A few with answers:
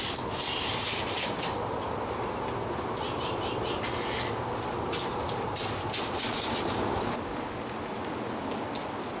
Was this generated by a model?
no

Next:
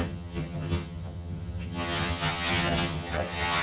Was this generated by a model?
yes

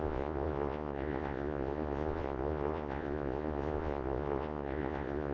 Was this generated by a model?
yes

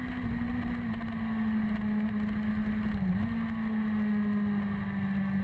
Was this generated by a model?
no